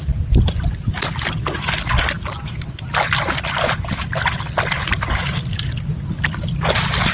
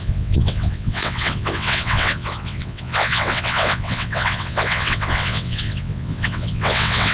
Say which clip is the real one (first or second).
first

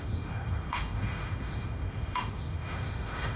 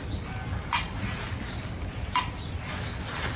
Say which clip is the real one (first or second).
second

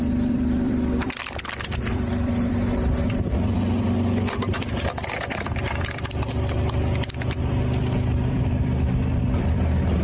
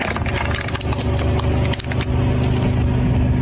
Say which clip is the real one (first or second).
second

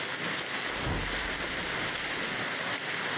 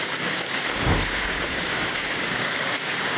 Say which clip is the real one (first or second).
first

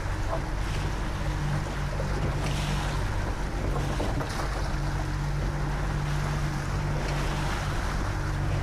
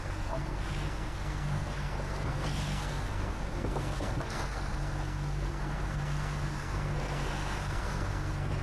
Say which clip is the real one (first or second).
first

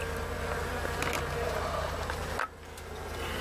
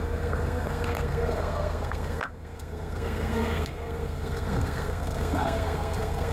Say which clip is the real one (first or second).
first